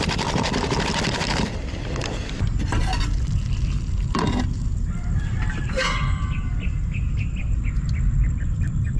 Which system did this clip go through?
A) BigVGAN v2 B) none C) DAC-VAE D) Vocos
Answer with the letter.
B